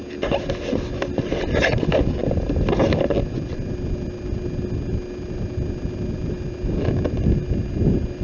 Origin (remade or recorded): recorded